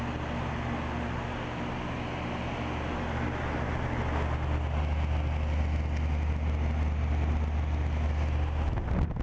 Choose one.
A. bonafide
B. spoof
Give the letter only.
A